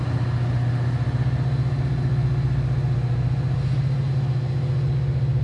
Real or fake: real